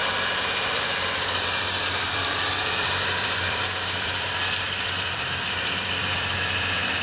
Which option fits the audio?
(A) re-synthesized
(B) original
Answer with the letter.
A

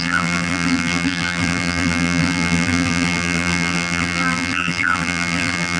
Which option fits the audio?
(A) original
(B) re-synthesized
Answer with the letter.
B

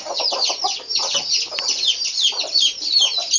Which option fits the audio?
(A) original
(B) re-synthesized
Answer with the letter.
B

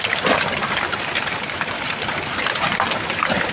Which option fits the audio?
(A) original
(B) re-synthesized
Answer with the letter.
B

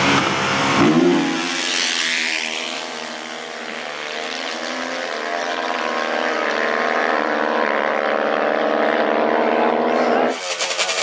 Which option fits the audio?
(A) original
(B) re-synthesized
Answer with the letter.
B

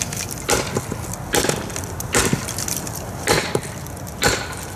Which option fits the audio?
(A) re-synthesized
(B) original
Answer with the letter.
B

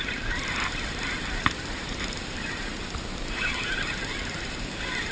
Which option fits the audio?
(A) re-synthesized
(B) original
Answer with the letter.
A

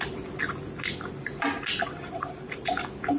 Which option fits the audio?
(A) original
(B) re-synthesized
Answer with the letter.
A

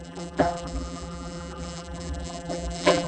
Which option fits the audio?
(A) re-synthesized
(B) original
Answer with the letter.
A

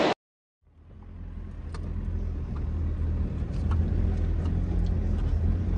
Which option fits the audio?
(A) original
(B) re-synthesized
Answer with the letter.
A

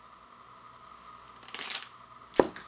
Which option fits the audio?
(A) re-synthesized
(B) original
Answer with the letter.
B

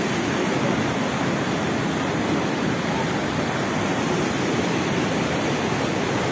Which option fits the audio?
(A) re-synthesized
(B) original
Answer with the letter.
A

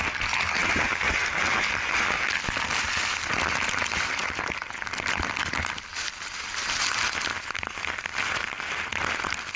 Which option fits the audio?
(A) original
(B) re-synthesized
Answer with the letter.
A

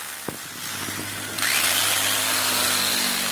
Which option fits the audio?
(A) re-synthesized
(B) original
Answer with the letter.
B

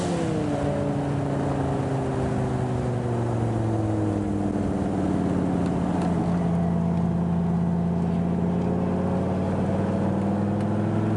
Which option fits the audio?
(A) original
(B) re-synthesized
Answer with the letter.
A